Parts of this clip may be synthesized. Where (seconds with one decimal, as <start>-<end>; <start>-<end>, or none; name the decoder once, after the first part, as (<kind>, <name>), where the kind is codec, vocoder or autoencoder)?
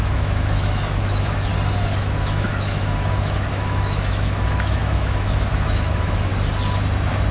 0.0-1.5 (autoencoder, DAC-VAE); 2.0-6.3